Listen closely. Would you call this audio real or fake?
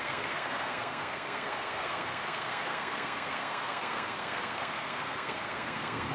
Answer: fake